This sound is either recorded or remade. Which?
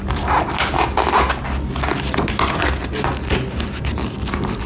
recorded